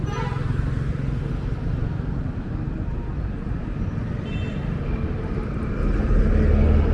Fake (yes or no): no